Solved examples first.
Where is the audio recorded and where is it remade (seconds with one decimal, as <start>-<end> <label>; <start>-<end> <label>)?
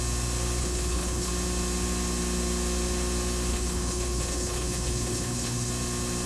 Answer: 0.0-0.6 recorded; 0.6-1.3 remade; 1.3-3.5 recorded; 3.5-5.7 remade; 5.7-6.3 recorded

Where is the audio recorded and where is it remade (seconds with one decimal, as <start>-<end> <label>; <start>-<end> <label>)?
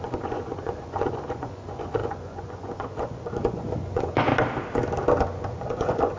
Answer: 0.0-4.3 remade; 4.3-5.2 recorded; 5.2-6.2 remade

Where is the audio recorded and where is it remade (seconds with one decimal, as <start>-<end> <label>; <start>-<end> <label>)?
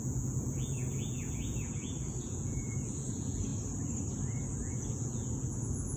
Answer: 0.0-3.5 remade; 3.5-4.5 recorded; 4.5-6.0 remade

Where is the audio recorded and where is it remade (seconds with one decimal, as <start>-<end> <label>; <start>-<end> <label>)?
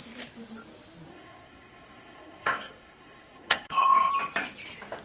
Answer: 0.0-1.1 recorded; 1.1-4.1 remade; 4.1-5.0 recorded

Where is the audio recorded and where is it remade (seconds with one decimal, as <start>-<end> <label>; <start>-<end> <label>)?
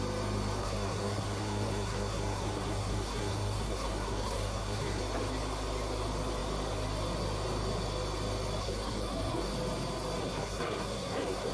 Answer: 0.0-0.6 recorded; 0.6-5.0 remade; 5.0-8.6 recorded; 8.6-9.4 remade; 9.4-10.2 recorded; 10.2-11.5 remade